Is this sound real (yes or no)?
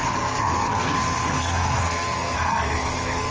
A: no